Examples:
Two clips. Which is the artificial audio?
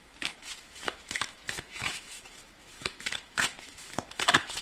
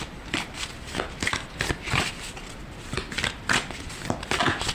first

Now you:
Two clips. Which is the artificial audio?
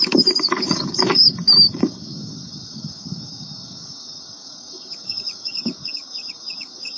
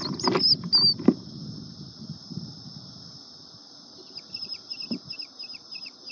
first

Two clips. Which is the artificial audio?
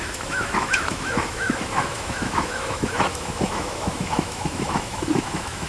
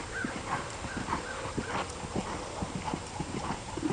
first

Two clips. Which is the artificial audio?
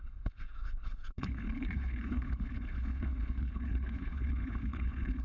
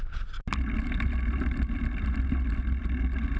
first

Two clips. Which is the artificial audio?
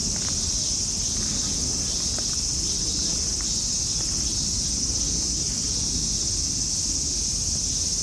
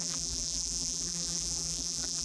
second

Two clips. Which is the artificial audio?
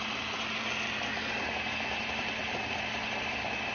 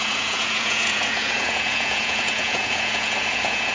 second